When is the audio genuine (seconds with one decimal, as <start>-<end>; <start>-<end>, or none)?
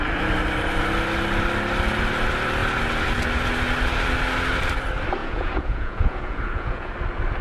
0.0-5.2; 6.9-7.4